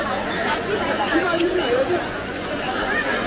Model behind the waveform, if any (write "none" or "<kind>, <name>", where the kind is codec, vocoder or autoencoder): vocoder, Vocos